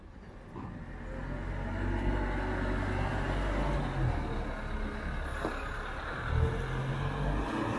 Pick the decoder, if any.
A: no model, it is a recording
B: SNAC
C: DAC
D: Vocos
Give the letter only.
A